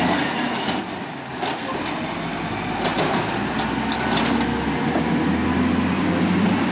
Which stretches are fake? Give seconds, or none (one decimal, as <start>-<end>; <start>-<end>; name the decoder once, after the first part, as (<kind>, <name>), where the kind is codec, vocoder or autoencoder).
none